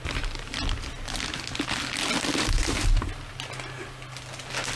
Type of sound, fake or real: real